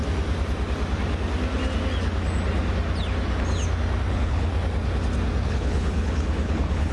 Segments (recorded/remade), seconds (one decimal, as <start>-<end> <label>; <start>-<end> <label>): 0.0-4.1 recorded; 4.1-4.5 remade; 4.5-5.5 recorded; 5.5-6.9 remade